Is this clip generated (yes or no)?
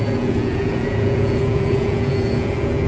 yes